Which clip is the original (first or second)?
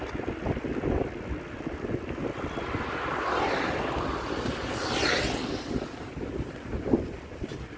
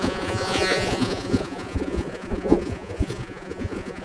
first